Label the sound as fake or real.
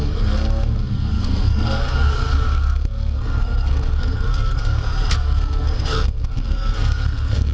fake